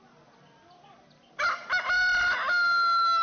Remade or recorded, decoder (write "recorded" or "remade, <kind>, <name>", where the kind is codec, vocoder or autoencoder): recorded